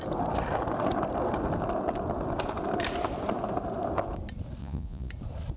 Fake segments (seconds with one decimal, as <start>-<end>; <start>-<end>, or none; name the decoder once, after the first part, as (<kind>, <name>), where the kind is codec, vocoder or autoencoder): 4.6-5.1 (vocoder, Vocos)